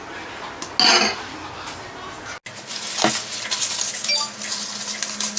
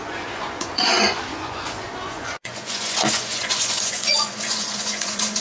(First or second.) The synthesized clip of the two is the second